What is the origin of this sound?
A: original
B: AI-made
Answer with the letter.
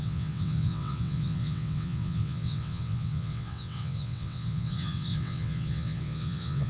B